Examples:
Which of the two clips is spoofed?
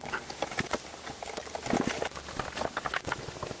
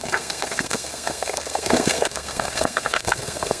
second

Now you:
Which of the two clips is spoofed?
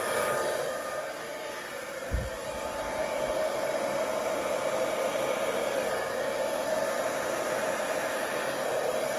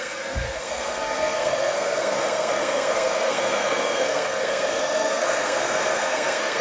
second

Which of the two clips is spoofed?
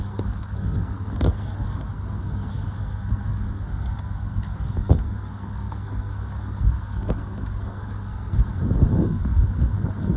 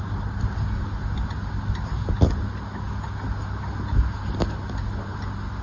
first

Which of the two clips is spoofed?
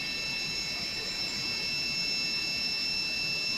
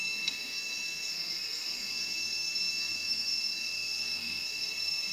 second